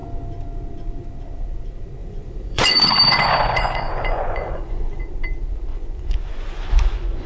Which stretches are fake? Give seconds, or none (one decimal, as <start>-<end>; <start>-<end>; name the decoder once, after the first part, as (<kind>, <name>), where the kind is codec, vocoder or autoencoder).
2.0-5.0 (vocoder, Vocos); 5.7-7.3